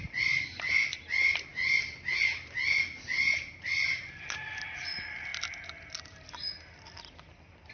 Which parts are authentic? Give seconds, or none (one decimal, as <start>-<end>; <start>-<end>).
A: 0.0-7.7